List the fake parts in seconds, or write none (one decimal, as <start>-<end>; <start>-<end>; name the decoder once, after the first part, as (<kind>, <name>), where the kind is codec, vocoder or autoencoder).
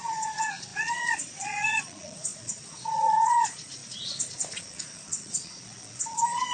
0.0-6.5 (vocoder, Vocos)